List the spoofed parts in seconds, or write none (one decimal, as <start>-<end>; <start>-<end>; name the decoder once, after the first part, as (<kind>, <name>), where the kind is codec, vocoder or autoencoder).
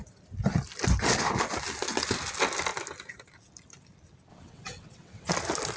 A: 4.3-5.3 (vocoder, WaveNeXt)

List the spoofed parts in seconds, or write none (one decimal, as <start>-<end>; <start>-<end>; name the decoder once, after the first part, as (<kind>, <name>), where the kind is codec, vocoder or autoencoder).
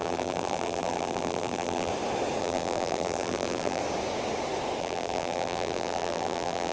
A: 0.0-1.9 (vocoder, BigVGAN v2); 2.4-3.8; 4.8-6.7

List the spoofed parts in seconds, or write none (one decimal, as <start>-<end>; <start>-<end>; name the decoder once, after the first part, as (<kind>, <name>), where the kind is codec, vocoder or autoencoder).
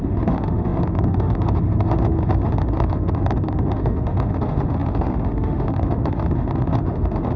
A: 0.0-7.4 (autoencoder, DAC-VAE)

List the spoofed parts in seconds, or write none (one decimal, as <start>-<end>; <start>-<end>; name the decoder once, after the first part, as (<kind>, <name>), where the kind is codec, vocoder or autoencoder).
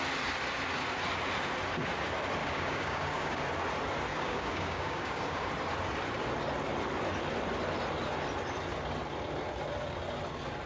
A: 2.4-3.4 (codec, DAC); 4.1-5.5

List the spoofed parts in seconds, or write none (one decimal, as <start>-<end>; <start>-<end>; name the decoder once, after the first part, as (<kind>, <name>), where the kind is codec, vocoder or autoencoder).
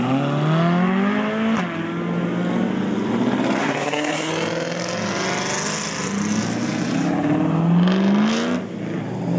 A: 3.6-4.3 (codec, SNAC)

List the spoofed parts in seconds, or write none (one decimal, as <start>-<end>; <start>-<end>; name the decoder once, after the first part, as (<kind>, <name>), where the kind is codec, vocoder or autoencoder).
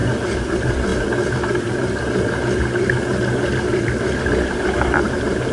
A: none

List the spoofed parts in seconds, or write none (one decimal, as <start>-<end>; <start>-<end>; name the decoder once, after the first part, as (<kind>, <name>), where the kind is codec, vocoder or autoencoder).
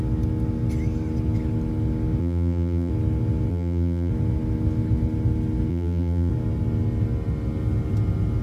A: 2.2-2.9 (vocoder, BigVGAN v2); 3.5-4.1; 5.7-6.3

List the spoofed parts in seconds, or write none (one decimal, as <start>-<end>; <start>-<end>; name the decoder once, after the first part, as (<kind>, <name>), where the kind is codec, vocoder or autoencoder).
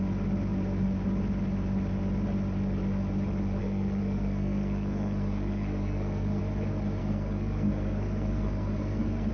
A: 3.6-6.4 (codec, SNAC); 7.0-9.3